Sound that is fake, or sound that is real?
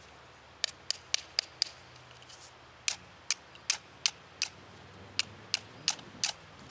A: real